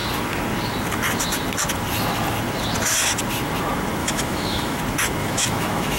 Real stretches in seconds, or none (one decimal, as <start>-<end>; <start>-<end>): 0.0-4.0; 4.8-5.2